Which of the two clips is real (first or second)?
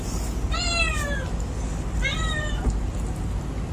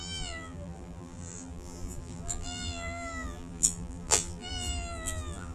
first